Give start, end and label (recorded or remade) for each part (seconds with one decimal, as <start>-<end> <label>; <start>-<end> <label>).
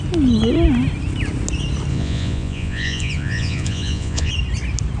0.0-1.9 recorded; 1.9-4.3 remade; 4.3-5.0 recorded